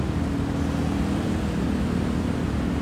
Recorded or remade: recorded